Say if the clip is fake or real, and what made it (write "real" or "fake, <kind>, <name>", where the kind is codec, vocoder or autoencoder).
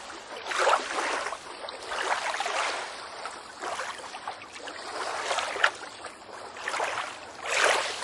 real